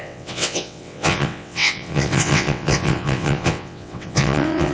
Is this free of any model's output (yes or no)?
no